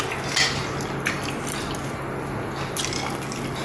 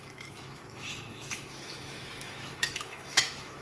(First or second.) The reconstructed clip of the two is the second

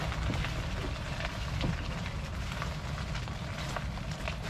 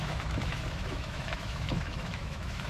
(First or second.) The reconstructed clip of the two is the second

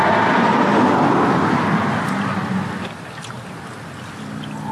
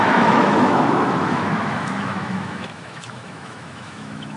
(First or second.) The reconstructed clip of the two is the second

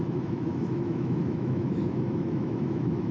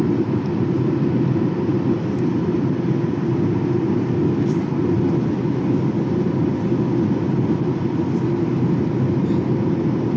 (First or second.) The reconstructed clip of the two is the first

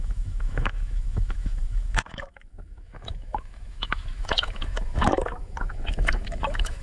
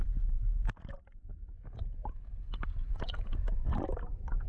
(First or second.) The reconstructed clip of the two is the first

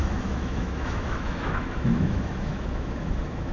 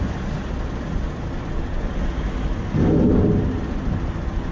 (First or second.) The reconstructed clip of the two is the first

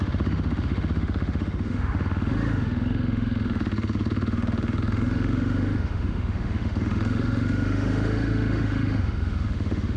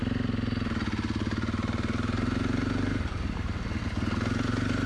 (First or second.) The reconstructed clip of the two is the first